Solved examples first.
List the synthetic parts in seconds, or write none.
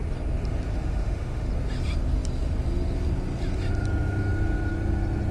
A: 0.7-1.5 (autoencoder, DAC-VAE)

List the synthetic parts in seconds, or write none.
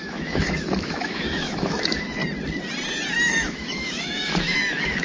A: 0.0-2.2 (autoencoder, DAC-VAE); 3.3-5.0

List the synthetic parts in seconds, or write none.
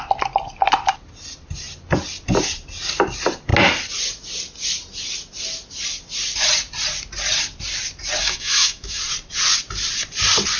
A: 8.2-9.0 (autoencoder, DAC-VAE)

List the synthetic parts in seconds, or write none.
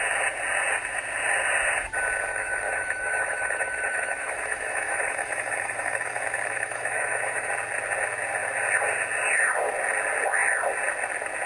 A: 2.3-7.5 (autoencoder, DAC-VAE)